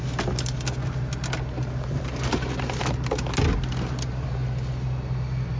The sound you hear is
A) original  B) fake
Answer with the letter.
A